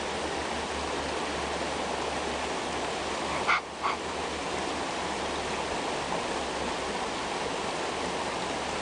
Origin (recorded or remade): recorded